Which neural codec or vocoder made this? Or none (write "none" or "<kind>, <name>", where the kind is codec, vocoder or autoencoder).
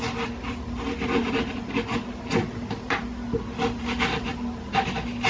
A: none